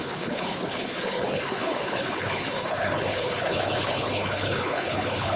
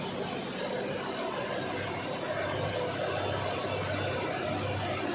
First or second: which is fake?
first